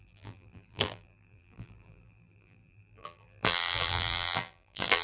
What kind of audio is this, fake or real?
fake